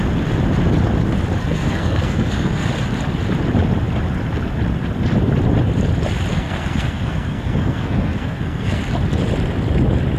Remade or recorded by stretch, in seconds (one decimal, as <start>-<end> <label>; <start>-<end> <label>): 0.0-1.4 recorded; 1.4-2.7 remade; 2.7-6.3 recorded; 6.3-8.8 remade; 8.8-10.2 recorded